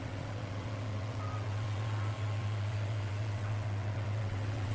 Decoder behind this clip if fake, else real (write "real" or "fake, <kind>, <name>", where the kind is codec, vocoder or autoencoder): fake, vocoder, WaveNeXt